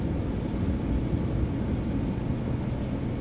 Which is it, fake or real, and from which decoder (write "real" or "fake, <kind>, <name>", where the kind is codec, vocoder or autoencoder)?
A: real